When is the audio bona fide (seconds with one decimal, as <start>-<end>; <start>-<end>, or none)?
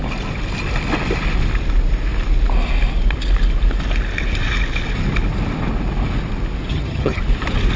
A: 0.0-6.7; 7.2-7.8